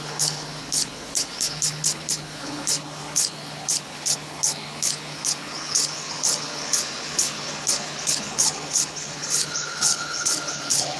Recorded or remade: remade